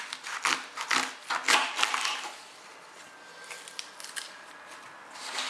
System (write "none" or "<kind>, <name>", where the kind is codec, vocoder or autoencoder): none